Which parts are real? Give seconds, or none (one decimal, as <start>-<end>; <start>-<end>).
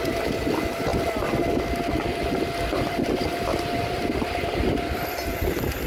0.0-5.9